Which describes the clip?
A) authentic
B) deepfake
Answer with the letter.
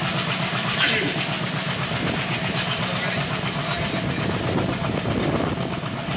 A